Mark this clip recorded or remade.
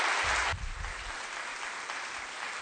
recorded